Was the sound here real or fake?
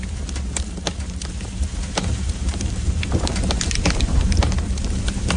fake